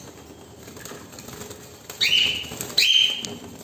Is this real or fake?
real